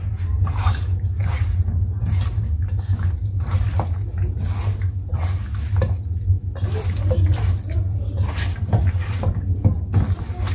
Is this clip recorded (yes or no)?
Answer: yes